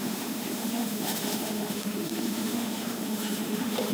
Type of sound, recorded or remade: remade